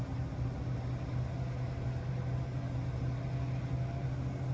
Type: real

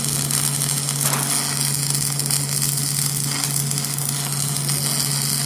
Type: real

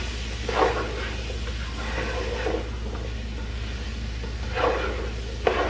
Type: real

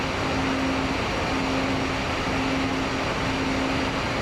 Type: real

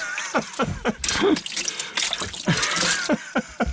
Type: real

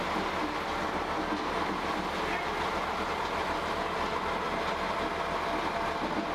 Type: real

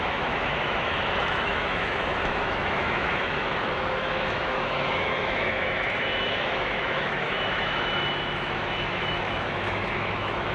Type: fake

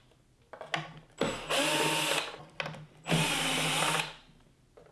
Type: real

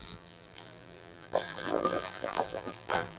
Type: fake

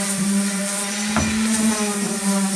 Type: real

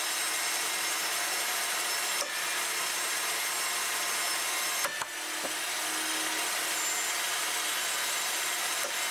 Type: real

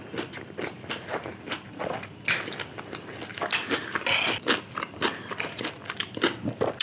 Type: real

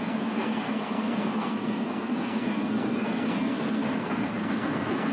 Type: fake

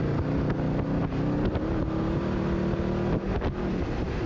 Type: real